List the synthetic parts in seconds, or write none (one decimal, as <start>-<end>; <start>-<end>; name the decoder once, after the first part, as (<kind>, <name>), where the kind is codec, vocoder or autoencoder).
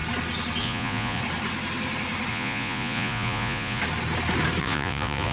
0.6-1.2 (vocoder, Vocos); 2.3-3.8; 4.6-5.3